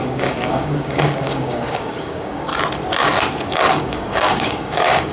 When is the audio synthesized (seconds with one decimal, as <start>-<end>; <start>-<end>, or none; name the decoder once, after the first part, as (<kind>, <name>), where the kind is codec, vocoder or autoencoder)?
0.0-2.5 (codec, DAC); 3.5-5.1